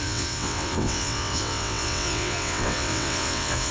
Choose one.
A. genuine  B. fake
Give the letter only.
B